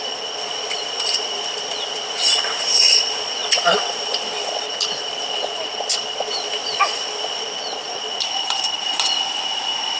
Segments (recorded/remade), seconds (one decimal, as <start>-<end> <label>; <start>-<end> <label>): 0.0-10.0 recorded